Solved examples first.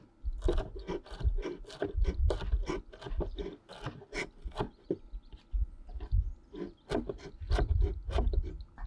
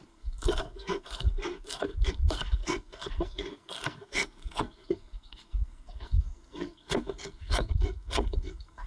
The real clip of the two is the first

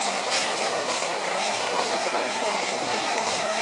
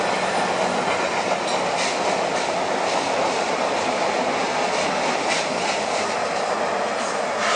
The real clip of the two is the second